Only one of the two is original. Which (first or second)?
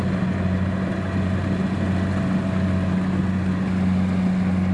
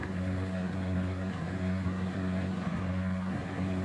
first